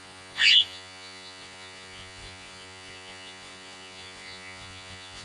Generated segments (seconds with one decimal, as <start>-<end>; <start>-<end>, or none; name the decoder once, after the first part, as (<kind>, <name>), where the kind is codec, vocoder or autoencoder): 0.0-5.2 (vocoder, Vocos)